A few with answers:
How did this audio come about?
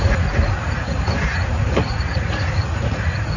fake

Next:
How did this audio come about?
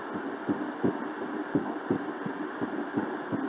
real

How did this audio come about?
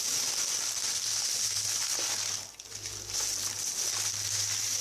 real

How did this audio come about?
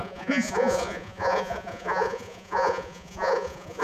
fake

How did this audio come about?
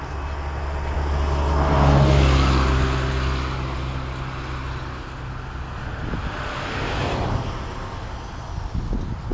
real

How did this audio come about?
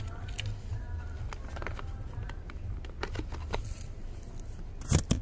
real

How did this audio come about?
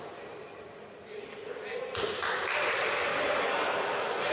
real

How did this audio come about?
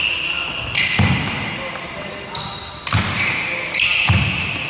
real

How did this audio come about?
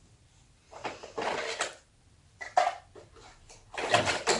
real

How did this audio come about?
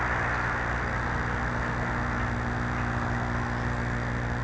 real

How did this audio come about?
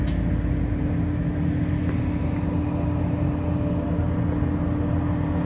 real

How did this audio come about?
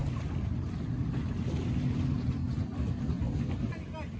real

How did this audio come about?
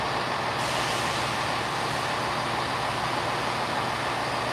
real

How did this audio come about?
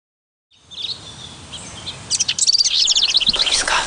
real